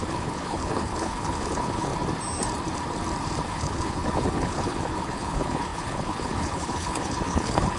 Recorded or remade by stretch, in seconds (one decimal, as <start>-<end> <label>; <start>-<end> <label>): 0.0-1.9 remade; 1.9-3.5 recorded; 3.5-7.8 remade